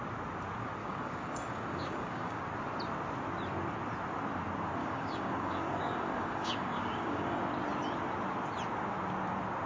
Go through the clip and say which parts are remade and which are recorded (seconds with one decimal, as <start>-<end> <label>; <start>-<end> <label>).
0.0-0.8 recorded; 0.8-2.4 remade; 2.4-4.8 recorded; 4.8-7.4 remade; 7.4-9.7 recorded